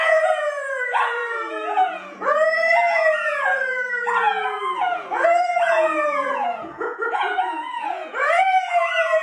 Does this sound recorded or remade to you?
remade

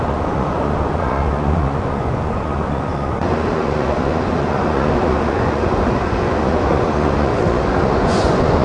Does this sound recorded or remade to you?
remade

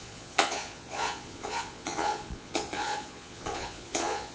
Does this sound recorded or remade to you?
remade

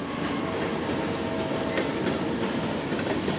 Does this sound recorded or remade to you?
recorded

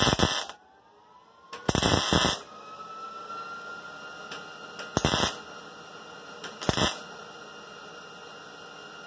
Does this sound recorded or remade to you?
recorded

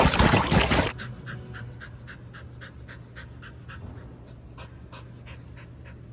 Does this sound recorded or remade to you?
recorded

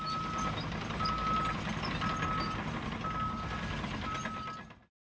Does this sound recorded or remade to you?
recorded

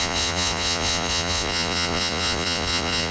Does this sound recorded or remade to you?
remade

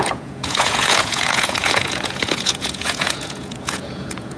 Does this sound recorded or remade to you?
remade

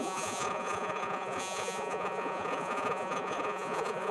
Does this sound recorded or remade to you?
remade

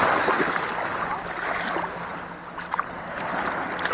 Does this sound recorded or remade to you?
recorded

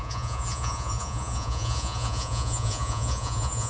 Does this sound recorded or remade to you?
remade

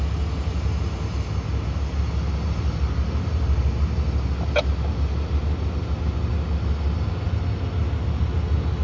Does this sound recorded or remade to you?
recorded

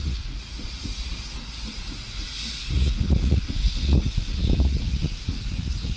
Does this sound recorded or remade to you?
remade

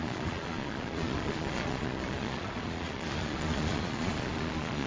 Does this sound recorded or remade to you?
remade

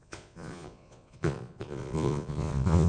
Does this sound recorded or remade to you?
remade